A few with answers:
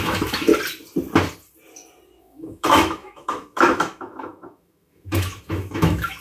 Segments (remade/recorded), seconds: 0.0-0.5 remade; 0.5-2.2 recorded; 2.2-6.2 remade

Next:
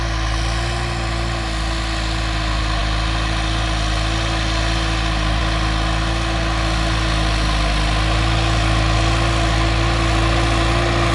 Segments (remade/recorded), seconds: 0.0-11.1 recorded

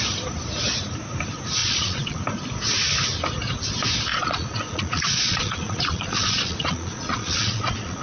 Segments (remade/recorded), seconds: 0.0-1.6 recorded; 1.6-2.2 remade; 2.2-4.1 recorded; 4.1-8.0 remade

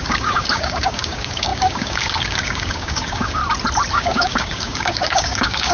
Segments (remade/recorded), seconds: 0.0-3.4 remade; 3.4-3.9 recorded; 3.9-5.7 remade